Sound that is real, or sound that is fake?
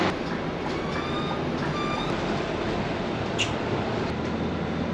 real